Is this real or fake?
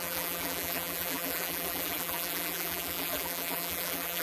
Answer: fake